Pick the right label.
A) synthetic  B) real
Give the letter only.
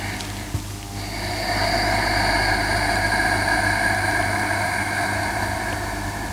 B